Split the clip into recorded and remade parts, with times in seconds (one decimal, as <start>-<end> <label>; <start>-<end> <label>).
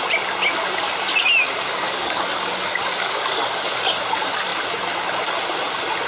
0.0-1.7 recorded; 1.7-3.7 remade; 3.7-6.1 recorded